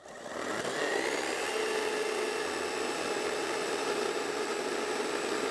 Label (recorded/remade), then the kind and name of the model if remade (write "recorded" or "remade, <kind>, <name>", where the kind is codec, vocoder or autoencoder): recorded